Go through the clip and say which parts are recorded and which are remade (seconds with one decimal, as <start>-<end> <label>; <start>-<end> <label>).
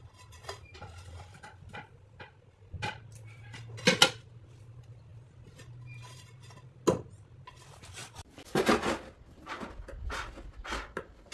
0.0-11.3 recorded